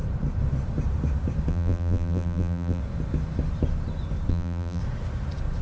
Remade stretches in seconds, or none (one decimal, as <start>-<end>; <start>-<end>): 1.5-2.8; 4.3-4.8